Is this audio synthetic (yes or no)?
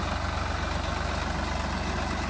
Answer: no